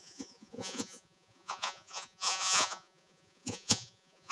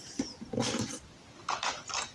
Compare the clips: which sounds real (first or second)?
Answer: second